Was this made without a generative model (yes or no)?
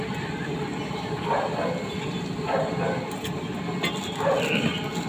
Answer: yes